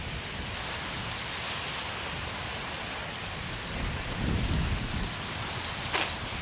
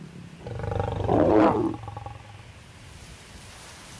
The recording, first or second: first